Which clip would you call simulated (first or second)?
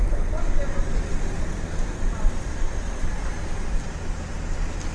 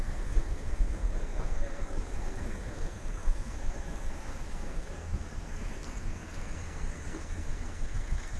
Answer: second